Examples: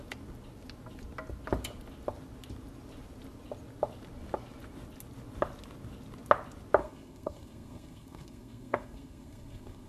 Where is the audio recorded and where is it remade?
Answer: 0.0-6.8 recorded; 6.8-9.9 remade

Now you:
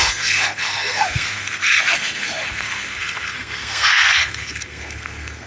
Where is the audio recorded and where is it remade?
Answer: 0.0-5.5 remade

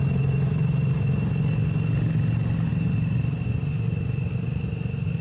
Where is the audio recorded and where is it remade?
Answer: 0.0-2.7 recorded; 2.7-4.6 remade; 4.6-5.2 recorded

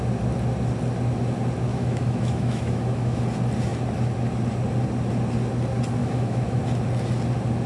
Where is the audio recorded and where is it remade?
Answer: 0.0-1.7 recorded; 1.7-3.2 remade; 3.2-6.0 recorded; 6.0-6.6 remade; 6.6-7.7 recorded

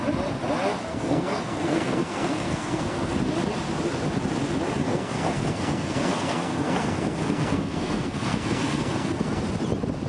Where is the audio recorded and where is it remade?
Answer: 0.0-0.9 recorded; 0.9-3.1 remade; 3.1-4.8 recorded; 4.8-9.4 remade; 9.4-10.1 recorded

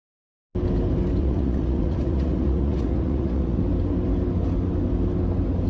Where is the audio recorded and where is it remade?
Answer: 0.0-1.2 recorded; 1.2-3.6 remade; 3.6-5.7 recorded

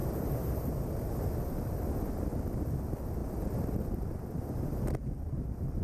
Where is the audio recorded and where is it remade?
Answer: 0.0-1.8 remade; 1.8-5.8 recorded

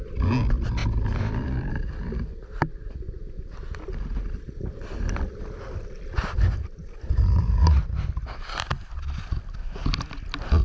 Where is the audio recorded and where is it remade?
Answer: 0.0-10.6 recorded